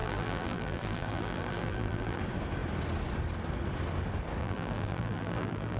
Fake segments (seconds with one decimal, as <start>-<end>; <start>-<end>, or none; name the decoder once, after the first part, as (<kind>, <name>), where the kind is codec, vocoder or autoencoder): 0.0-2.2 (vocoder, BigVGAN v2); 4.4-5.8

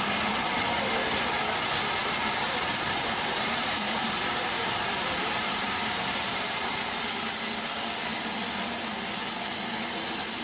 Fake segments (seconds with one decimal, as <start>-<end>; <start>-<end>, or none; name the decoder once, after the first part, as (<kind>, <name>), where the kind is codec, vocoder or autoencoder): 2.0-6.7 (vocoder, BigVGAN v2)

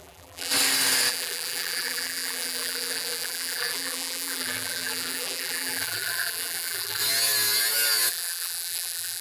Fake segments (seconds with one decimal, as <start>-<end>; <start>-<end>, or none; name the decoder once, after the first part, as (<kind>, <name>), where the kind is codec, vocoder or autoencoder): 0.0-0.5 (vocoder, BigVGAN v2); 1.1-7.0; 8.1-9.2

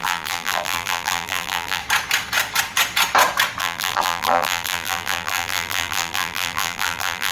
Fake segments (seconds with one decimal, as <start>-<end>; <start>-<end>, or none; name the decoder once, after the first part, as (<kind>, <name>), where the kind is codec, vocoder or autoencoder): 0.0-1.8 (vocoder, BigVGAN v2); 3.6-7.3

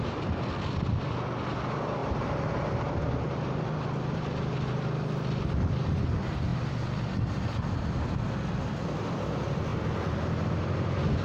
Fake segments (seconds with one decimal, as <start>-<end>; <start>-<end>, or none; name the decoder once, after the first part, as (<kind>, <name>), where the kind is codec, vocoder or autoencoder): 2.0-3.0 (vocoder, BigVGAN v2)

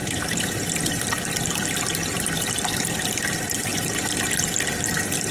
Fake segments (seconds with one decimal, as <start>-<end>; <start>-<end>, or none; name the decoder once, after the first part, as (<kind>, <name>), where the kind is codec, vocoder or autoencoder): 0.0-1.4 (vocoder, BigVGAN v2); 3.7-4.2

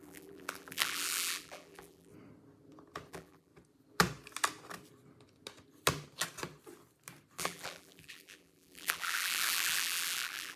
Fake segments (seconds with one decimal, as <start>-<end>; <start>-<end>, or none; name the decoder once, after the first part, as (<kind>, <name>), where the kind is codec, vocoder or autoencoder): 0.0-2.1 (vocoder, BigVGAN v2); 3.1-3.5; 7.4-10.6

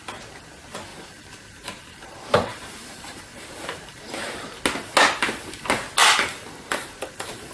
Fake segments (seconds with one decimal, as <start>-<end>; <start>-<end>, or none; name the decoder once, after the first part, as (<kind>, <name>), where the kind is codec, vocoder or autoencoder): 0.9-4.6 (vocoder, BigVGAN v2); 6.0-7.5